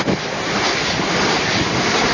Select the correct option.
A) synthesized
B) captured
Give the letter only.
B